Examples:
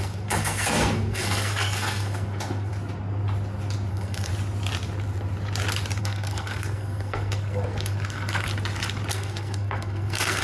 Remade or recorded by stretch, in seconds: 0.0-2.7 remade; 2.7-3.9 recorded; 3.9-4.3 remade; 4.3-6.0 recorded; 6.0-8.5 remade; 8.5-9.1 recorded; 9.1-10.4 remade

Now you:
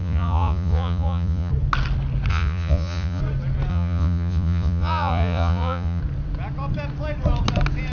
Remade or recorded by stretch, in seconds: 0.0-1.5 remade; 1.5-2.3 recorded; 2.3-3.2 remade; 3.2-3.7 recorded; 3.7-6.0 remade; 6.0-7.9 recorded